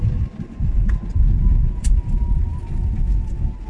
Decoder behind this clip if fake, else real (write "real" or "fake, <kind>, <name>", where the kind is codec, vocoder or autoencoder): real